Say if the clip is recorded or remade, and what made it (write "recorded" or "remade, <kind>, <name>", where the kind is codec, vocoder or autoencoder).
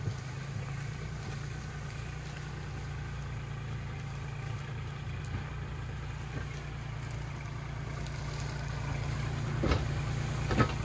recorded